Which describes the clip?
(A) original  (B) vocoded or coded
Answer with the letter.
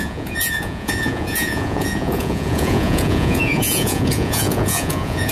B